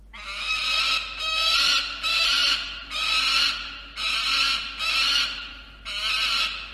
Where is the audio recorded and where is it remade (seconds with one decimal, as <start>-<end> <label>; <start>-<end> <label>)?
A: 0.0-6.7 recorded